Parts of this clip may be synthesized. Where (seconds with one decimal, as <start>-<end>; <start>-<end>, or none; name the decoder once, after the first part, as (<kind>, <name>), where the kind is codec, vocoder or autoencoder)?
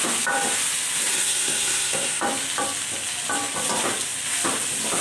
1.1-2.2 (codec, SNAC)